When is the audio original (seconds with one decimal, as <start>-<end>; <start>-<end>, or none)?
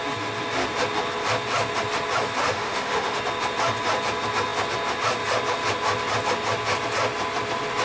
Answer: 0.0-2.4; 3.2-7.8